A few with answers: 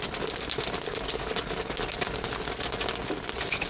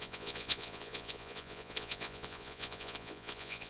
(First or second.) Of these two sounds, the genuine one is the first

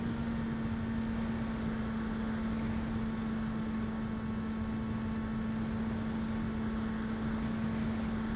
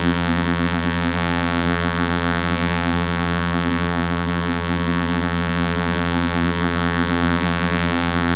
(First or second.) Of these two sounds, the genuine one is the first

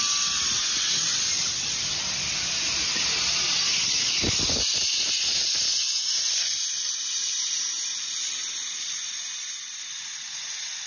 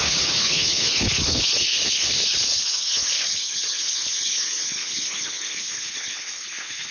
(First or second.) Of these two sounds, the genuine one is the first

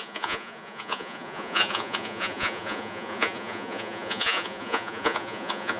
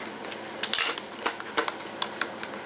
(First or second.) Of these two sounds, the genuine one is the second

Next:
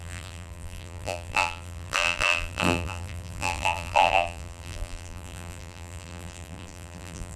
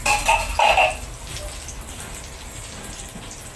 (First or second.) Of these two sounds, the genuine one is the second